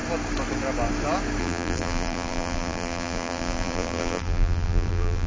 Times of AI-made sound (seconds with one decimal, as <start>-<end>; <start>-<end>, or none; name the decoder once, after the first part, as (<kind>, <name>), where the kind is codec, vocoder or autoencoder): 1.4-5.3 (vocoder, BigVGAN v2)